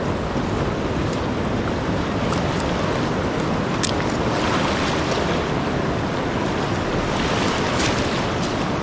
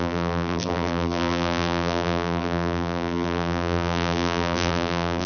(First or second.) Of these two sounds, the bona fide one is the first